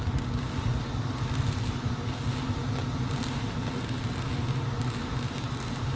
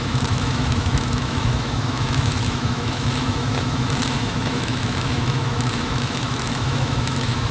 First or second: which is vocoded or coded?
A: second